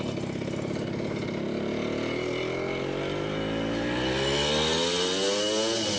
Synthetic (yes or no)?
no